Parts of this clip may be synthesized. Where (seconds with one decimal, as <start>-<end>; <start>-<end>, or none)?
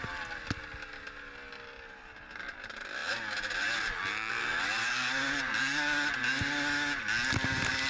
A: none